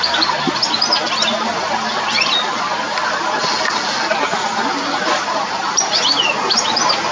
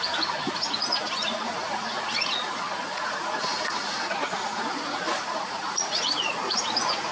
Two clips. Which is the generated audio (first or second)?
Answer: second